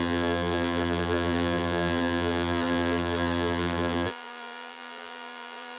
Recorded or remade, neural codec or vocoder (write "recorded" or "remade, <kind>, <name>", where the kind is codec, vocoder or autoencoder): remade, vocoder, BigVGAN v2